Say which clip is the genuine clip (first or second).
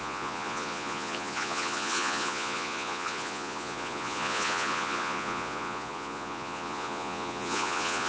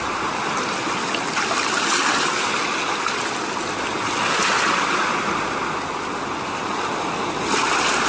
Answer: second